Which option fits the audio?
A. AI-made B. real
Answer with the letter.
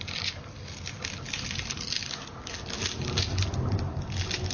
B